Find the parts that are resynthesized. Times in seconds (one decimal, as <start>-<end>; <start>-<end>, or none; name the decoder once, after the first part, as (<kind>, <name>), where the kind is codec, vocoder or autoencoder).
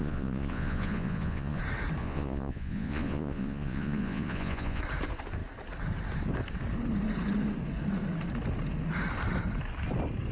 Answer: 0.0-1.6 (vocoder, Vocos); 2.0-4.8